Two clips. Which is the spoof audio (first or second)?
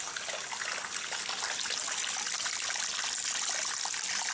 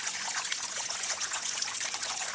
second